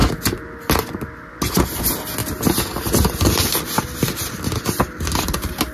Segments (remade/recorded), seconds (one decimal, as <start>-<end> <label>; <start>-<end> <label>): 0.0-5.7 recorded